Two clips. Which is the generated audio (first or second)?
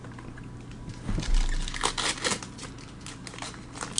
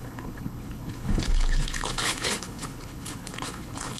second